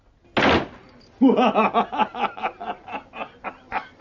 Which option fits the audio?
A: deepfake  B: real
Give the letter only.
B